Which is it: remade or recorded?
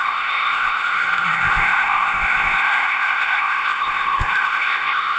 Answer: remade